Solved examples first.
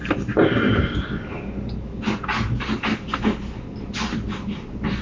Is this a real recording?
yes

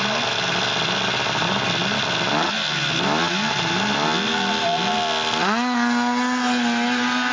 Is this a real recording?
yes